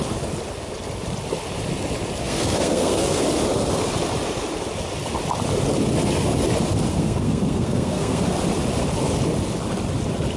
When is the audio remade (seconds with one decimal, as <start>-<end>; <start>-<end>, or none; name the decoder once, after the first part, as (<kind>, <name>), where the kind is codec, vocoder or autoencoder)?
2.2-3.2 (codec, SNAC); 6.9-8.2